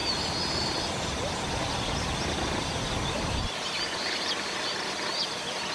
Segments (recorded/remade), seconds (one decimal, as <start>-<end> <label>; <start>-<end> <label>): 0.0-5.7 recorded

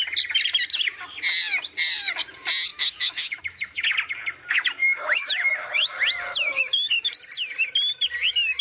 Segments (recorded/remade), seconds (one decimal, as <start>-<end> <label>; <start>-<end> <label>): 0.0-2.7 recorded; 2.7-3.4 remade; 3.4-4.8 recorded; 4.8-5.5 remade; 5.5-6.3 recorded; 6.3-6.9 remade; 6.9-8.6 recorded

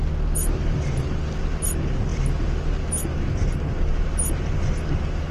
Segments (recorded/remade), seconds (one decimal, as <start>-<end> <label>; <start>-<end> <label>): 0.0-5.3 recorded

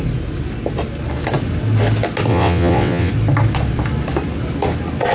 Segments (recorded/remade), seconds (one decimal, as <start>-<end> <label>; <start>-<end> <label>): 0.0-2.3 recorded; 2.3-3.1 remade; 3.1-5.1 recorded

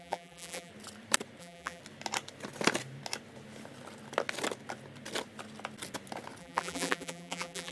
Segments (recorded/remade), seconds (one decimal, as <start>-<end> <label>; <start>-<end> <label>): 0.0-0.7 remade; 0.7-1.4 recorded; 1.4-1.8 remade; 1.8-6.4 recorded; 6.4-7.7 remade

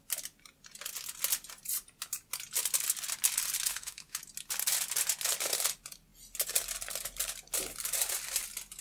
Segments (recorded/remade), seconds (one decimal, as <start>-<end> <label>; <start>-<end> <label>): 0.0-3.7 recorded; 3.7-4.2 remade; 4.2-8.8 recorded